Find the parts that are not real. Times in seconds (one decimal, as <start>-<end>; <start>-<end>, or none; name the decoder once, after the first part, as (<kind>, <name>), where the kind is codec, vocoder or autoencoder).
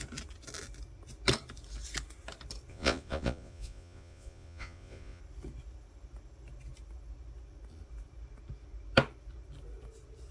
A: 2.7-5.2 (vocoder, Vocos)